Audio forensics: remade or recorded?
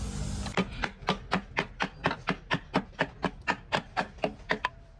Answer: recorded